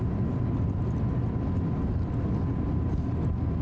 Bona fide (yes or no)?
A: yes